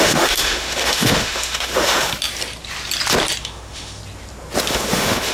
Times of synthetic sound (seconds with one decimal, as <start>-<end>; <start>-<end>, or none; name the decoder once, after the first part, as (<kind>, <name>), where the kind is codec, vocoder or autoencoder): 0.0-2.1 (autoencoder, DAC-VAE); 3.4-4.0; 4.7-5.3